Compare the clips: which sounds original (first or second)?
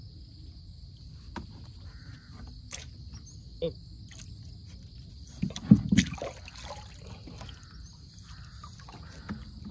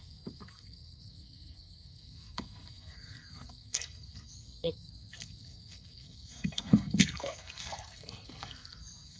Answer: first